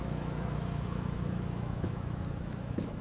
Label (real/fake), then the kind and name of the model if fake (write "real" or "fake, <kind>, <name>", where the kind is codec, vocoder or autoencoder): fake, autoencoder, DAC-VAE